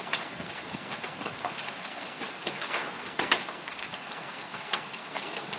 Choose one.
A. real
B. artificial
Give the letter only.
B